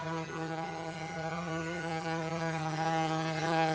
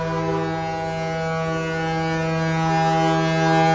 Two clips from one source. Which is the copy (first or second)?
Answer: first